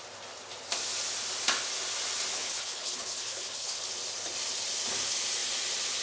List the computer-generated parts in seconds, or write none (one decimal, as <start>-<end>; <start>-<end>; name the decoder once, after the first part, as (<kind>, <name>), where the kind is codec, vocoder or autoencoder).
2.3-3.8 (codec, HILCodec)